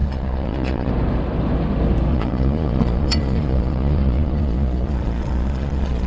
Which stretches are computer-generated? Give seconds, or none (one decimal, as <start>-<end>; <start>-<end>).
0.0-0.9; 2.1-6.1